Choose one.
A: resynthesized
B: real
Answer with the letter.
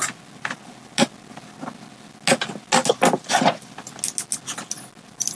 B